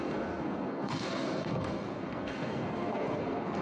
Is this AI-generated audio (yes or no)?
yes